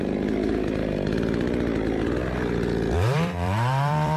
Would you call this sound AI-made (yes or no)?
yes